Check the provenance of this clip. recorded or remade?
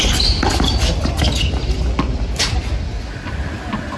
recorded